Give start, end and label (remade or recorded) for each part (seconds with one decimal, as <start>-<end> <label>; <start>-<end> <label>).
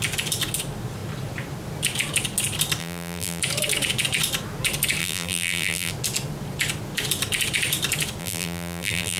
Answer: 0.0-2.8 recorded; 2.8-3.4 remade; 3.4-5.0 recorded; 5.0-5.9 remade; 5.9-8.2 recorded; 8.2-9.2 remade